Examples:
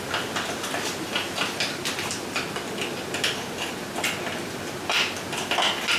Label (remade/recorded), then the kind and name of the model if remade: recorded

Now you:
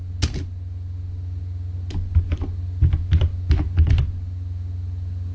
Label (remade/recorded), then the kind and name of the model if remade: recorded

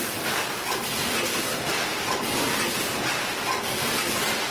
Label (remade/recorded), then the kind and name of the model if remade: recorded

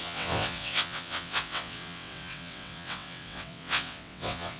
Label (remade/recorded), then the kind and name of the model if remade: remade, vocoder, WaveNeXt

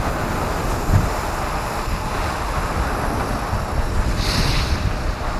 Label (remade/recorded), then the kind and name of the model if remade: recorded